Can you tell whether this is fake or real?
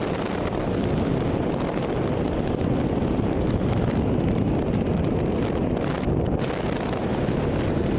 real